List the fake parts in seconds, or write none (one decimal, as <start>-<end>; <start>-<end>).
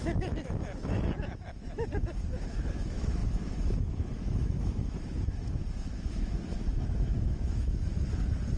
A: 0.0-7.9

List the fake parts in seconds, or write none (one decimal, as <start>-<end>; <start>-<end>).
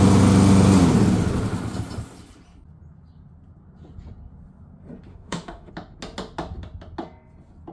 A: 5.1-5.7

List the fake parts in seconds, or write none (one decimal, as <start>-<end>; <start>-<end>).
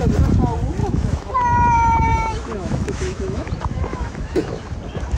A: 0.8-1.3; 2.1-3.5; 3.9-4.6